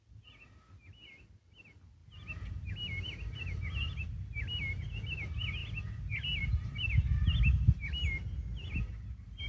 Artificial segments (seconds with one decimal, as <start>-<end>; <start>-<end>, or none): none